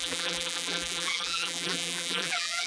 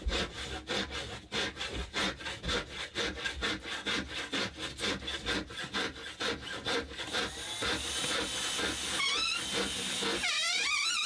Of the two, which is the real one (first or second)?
second